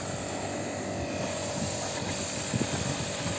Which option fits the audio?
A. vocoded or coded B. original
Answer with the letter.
B